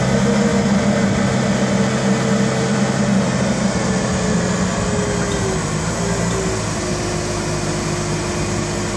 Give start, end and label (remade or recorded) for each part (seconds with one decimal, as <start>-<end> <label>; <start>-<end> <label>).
0.0-9.0 recorded